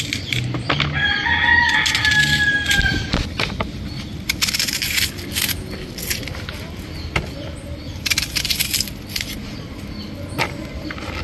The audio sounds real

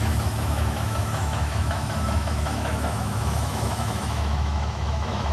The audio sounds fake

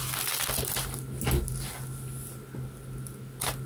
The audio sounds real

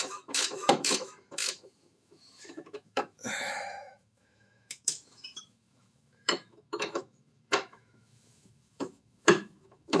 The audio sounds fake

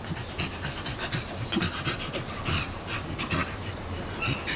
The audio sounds real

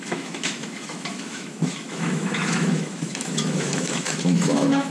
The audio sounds fake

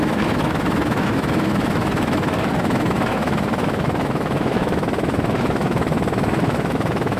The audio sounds fake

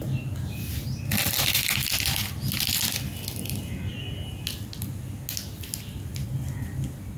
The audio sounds real